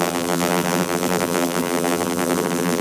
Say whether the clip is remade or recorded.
remade